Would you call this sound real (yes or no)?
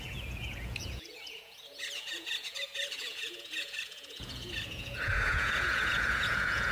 no